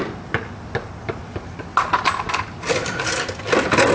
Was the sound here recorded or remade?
recorded